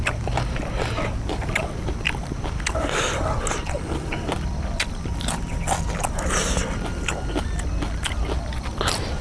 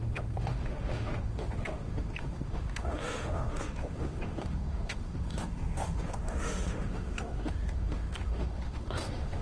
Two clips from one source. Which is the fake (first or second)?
second